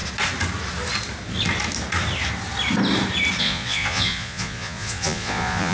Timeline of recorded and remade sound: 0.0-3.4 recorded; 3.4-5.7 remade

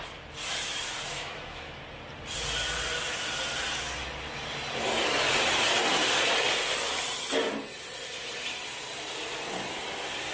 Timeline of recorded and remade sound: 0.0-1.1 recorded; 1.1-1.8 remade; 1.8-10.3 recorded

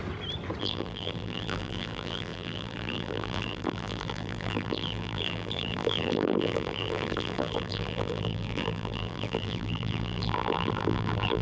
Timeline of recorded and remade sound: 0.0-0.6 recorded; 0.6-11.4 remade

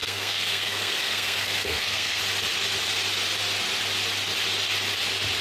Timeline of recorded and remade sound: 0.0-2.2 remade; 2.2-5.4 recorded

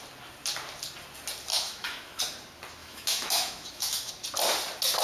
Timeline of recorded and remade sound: 0.0-1.5 recorded; 1.5-2.2 remade; 2.2-2.8 recorded; 2.8-4.1 remade; 4.1-5.0 recorded

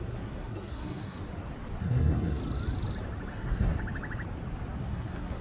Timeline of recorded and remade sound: 0.0-1.2 remade; 1.2-1.8 recorded; 1.8-2.4 remade; 2.4-3.3 recorded; 3.3-3.8 remade; 3.8-4.8 recorded; 4.8-5.4 remade